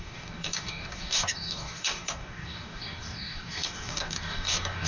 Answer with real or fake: fake